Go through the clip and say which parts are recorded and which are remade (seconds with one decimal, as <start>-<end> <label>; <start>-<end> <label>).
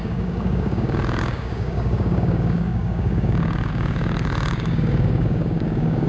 0.0-6.1 remade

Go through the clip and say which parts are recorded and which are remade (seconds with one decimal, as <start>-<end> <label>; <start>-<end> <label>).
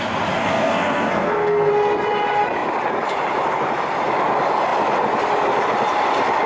0.0-0.4 recorded; 0.4-1.7 remade; 1.7-6.5 recorded